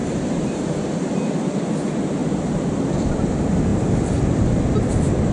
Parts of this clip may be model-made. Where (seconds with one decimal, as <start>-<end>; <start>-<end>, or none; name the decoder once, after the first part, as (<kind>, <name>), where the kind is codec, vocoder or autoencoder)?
0.0-1.1 (vocoder, BigVGAN v2); 2.2-2.7